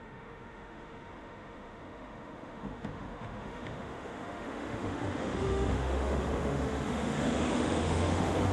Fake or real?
fake